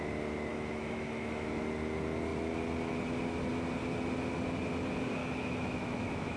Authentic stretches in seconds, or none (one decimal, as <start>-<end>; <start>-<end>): 0.0-0.5; 1.6-5.2